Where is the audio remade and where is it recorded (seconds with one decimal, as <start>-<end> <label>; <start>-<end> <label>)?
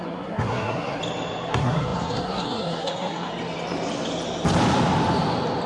0.0-1.0 remade; 1.0-1.5 recorded; 1.5-3.3 remade; 3.3-5.7 recorded